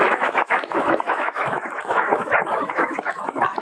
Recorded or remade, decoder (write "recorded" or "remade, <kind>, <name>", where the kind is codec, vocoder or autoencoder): remade, autoencoder, DAC-VAE